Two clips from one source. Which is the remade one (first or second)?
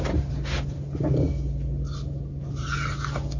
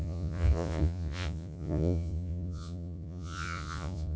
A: second